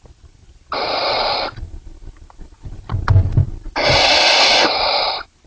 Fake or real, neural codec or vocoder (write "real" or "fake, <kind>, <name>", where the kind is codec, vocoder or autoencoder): real